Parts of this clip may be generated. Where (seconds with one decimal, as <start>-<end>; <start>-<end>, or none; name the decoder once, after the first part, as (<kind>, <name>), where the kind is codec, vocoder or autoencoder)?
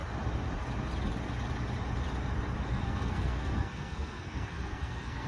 2.7-5.3 (codec, SNAC)